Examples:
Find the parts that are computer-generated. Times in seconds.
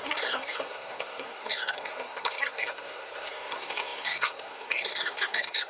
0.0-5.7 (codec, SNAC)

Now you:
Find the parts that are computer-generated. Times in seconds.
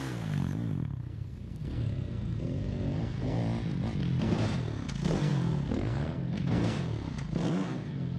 0.0-3.4 (codec, SNAC); 4.2-8.2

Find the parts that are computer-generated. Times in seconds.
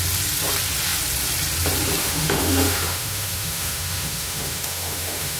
2.0-5.4 (autoencoder, DAC-VAE)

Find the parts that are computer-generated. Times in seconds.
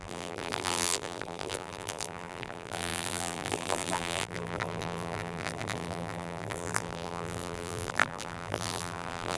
0.0-9.4 (vocoder, BigVGAN v2)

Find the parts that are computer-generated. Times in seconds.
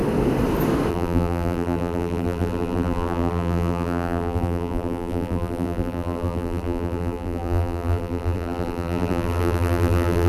0.9-10.3 (vocoder, BigVGAN v2)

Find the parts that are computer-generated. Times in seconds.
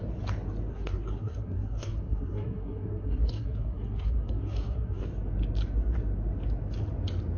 0.7-5.0 (codec, SNAC)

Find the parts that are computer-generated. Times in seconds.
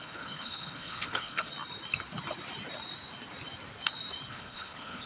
0.0-1.5 (codec, HILCodec); 4.3-5.1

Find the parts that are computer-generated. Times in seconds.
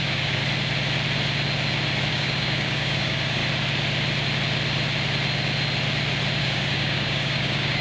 0.0-0.4 (codec, DAC); 2.1-3.4; 6.4-7.8